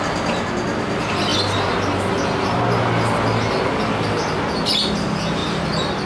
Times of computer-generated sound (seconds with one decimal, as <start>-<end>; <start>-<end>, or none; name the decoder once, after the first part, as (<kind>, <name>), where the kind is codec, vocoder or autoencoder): none